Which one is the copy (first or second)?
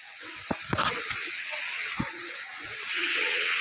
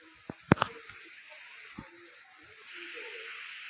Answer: first